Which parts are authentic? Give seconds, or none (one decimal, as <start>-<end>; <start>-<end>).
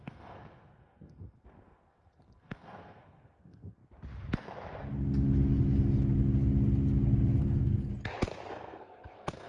3.8-7.4; 7.9-8.5